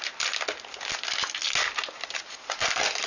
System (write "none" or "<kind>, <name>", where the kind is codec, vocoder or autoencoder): none